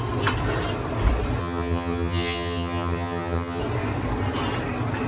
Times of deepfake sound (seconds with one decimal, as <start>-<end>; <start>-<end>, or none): 1.4-3.6